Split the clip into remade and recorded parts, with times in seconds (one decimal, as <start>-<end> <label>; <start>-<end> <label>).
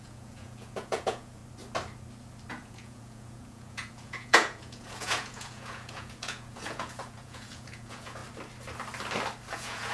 0.0-1.4 remade; 1.4-2.5 recorded; 2.5-8.2 remade; 8.2-9.5 recorded; 9.5-9.9 remade